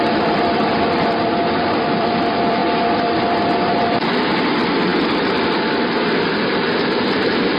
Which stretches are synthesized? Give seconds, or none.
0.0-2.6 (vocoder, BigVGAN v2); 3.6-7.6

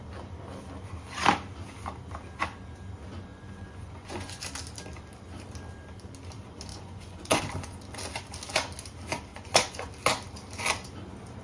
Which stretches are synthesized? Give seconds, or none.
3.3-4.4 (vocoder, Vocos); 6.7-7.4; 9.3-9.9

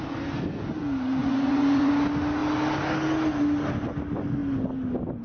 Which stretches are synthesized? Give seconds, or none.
1.2-1.9 (vocoder, Vocos)

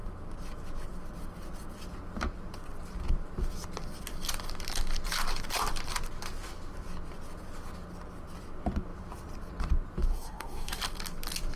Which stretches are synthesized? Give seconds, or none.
10.1-10.8 (codec, DAC)

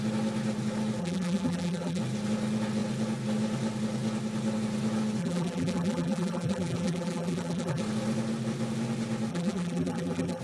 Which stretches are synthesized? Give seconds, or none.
1.0-2.0 (vocoder, BigVGAN v2); 5.2-7.8; 9.3-10.4